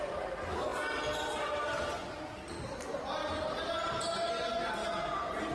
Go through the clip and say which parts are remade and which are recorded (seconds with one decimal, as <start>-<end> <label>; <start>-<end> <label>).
0.0-5.5 recorded